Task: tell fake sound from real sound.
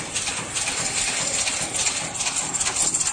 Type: real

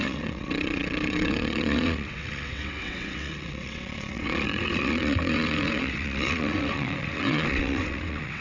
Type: fake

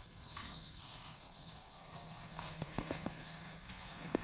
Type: fake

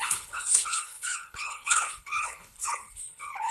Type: fake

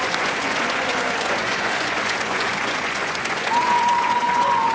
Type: fake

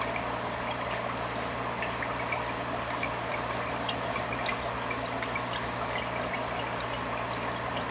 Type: real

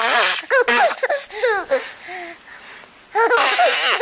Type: real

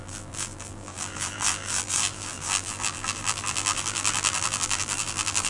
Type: fake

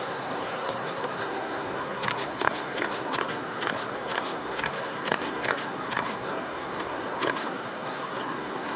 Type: fake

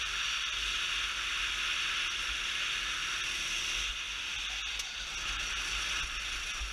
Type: real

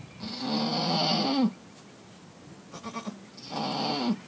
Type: real